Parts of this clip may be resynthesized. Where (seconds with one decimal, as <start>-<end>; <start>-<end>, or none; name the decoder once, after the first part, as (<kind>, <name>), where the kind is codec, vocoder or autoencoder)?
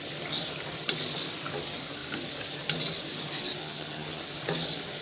3.6-4.2 (vocoder, HiFi-GAN)